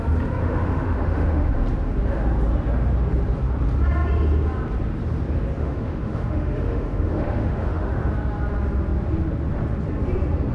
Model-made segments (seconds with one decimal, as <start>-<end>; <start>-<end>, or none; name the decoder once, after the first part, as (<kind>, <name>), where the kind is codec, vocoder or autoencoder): 0.4-1.5 (autoencoder, DAC-VAE); 5.6-8.1